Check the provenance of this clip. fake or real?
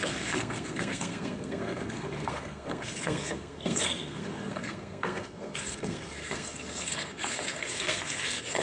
fake